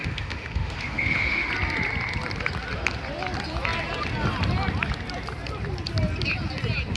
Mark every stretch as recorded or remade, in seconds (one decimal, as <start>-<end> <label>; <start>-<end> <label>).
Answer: 0.0-1.5 remade; 1.5-7.0 recorded